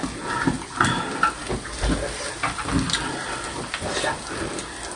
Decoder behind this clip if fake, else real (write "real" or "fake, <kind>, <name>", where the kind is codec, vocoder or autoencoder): real